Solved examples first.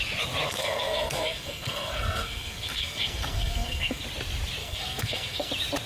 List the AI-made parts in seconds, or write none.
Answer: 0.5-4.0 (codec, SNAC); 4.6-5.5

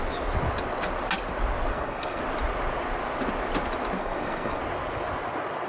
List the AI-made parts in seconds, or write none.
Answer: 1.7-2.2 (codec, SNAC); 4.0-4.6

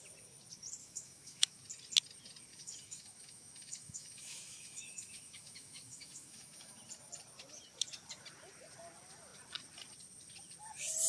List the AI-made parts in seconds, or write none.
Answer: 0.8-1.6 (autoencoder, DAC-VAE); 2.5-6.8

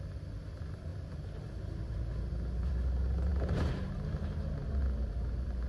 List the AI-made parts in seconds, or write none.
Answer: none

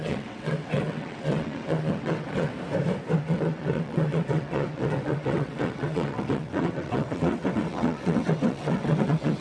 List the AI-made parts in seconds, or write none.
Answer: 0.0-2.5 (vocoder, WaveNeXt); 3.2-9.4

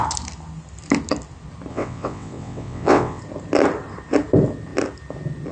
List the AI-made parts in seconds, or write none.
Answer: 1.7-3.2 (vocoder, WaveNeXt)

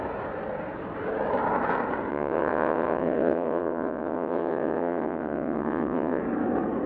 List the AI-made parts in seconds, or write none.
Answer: 2.1-6.2 (vocoder, WaveNeXt)